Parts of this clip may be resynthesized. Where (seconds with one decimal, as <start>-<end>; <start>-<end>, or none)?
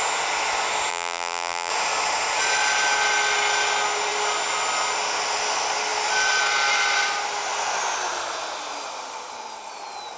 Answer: 0.9-1.7